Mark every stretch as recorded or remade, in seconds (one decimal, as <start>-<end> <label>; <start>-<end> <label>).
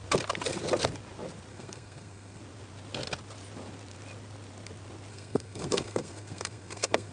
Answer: 0.0-1.5 recorded; 1.5-2.4 remade; 2.4-5.1 recorded; 5.1-7.1 remade